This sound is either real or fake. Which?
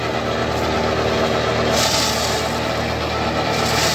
real